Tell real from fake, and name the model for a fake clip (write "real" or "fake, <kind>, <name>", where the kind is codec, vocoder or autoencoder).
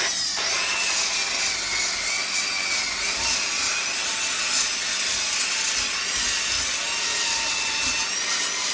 real